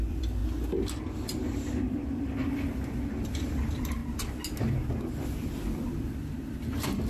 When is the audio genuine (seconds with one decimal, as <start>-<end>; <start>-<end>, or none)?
4.0-5.2